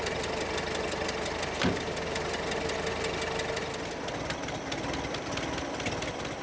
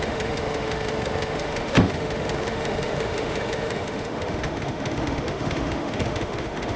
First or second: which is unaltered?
first